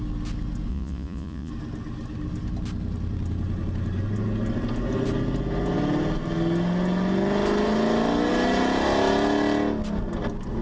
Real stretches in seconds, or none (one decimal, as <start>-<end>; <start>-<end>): 0.0-0.7; 1.5-10.6